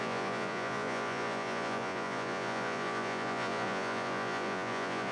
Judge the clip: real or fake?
fake